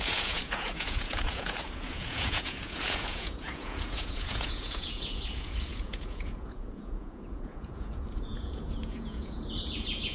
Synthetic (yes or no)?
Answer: yes